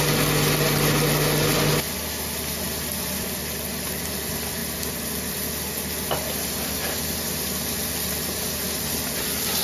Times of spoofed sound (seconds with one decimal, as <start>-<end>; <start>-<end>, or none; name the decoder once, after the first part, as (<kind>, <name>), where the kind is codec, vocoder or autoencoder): none